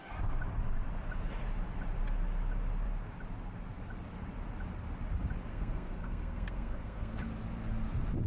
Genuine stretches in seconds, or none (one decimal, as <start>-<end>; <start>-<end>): 0.0-5.5; 7.2-8.3